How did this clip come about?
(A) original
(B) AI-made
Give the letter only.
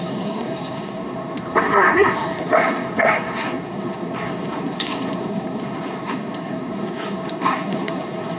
B